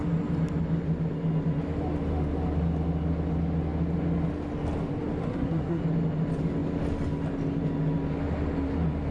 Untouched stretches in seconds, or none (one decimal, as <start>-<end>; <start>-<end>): 0.0-5.3; 5.8-9.1